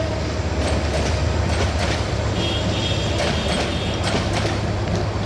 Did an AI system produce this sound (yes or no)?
no